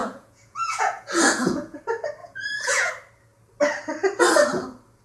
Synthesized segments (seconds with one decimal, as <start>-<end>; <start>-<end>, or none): 0.0-1.8; 2.2-2.9